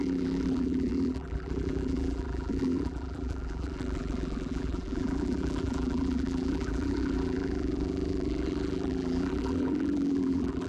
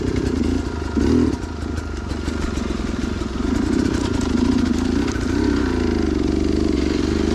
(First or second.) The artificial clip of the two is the first